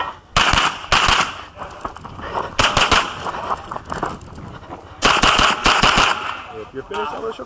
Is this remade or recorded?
recorded